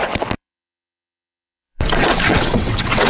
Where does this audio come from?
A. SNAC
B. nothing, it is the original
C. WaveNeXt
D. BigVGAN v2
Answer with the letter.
C